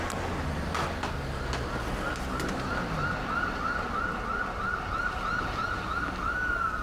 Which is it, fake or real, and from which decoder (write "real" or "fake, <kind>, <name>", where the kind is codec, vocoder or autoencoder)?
real